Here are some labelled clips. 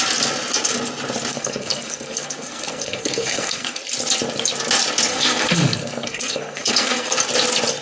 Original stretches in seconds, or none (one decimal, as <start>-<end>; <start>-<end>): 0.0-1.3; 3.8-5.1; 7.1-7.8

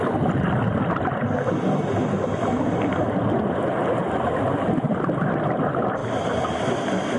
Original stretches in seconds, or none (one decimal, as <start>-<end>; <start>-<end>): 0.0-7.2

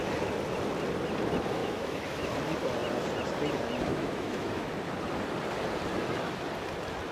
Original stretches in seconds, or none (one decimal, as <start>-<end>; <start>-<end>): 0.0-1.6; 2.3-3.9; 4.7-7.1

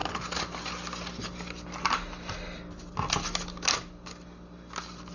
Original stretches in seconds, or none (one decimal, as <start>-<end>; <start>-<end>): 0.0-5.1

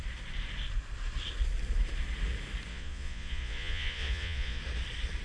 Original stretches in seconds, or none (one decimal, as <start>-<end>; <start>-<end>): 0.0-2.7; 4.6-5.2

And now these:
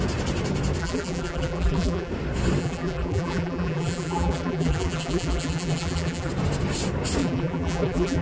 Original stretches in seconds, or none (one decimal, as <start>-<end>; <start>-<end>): 0.0-0.8; 2.1-2.6; 6.3-7.2